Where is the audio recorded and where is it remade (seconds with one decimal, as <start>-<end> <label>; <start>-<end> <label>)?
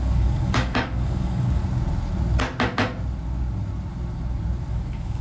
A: 0.0-1.6 remade; 1.6-4.7 recorded; 4.7-5.2 remade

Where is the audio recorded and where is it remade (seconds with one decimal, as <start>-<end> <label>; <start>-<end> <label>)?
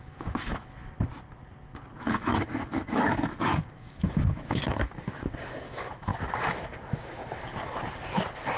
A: 0.0-0.8 remade; 0.8-2.0 recorded; 2.0-6.1 remade; 6.1-6.8 recorded; 6.8-7.2 remade; 7.2-8.6 recorded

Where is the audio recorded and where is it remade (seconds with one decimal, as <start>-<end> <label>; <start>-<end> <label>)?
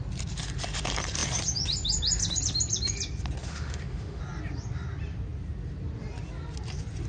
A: 0.0-3.4 recorded; 3.4-4.2 remade; 4.2-7.1 recorded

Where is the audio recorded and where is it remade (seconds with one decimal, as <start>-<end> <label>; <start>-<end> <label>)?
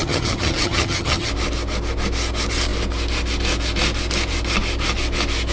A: 0.0-1.3 remade; 1.3-5.5 recorded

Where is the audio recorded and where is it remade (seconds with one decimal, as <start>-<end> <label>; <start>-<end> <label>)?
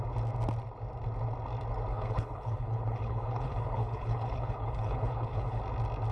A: 0.0-1.9 recorded; 1.9-5.6 remade; 5.6-6.1 recorded